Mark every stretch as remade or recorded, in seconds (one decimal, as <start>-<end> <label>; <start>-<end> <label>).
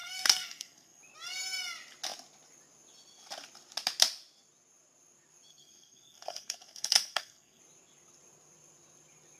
0.0-1.0 remade; 1.0-5.5 recorded; 5.5-7.6 remade; 7.6-9.4 recorded